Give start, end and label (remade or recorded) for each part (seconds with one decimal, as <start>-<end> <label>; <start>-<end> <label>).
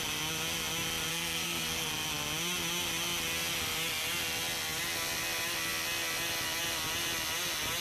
0.0-1.1 recorded; 1.1-1.9 remade; 1.9-7.8 recorded